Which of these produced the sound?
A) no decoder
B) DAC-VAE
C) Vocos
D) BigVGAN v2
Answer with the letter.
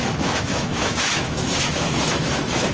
B